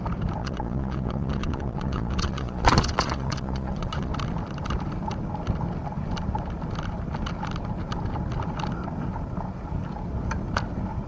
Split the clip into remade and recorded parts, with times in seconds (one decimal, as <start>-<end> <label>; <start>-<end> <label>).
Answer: 0.0-0.4 recorded; 0.4-4.1 remade; 4.1-11.1 recorded